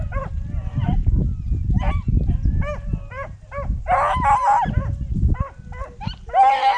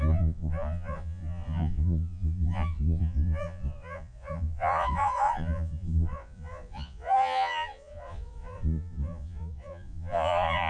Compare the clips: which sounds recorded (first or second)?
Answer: first